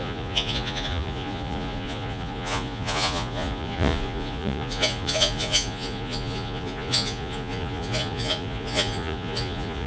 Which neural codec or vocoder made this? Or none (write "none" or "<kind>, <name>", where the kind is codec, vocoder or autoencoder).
vocoder, Vocos